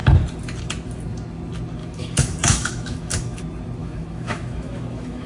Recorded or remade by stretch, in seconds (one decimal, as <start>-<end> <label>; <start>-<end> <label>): 0.0-1.8 recorded; 1.8-3.4 remade; 3.4-3.8 recorded; 3.8-5.3 remade

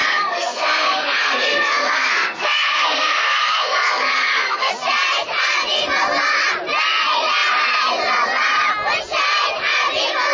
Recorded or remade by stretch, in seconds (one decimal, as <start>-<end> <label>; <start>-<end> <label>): 0.0-4.7 remade; 4.7-10.3 recorded

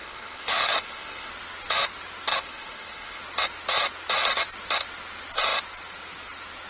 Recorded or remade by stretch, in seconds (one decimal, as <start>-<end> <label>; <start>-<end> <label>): 0.0-1.3 remade; 1.3-2.3 recorded; 2.3-3.2 remade; 3.2-6.7 recorded

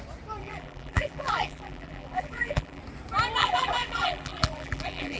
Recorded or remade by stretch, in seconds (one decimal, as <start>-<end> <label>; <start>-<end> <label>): 0.0-0.4 recorded; 0.4-2.8 remade; 2.8-3.4 recorded; 3.4-5.2 remade

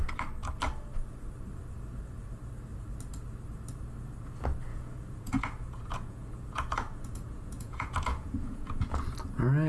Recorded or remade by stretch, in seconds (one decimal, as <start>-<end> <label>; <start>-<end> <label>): 0.0-4.7 recorded; 4.7-9.0 remade; 9.0-9.7 recorded